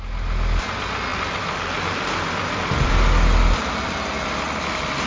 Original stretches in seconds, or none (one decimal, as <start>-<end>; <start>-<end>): 0.0-1.1; 4.2-5.1